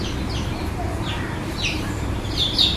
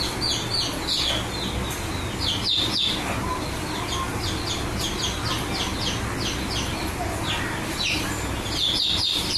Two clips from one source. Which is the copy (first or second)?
first